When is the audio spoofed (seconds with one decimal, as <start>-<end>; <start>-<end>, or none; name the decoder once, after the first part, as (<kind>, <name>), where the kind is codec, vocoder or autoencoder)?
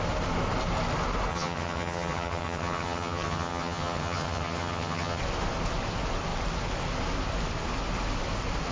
1.3-5.2 (vocoder, HiFi-GAN)